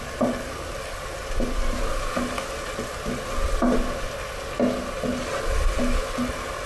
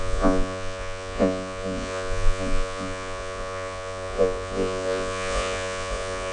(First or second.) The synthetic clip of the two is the second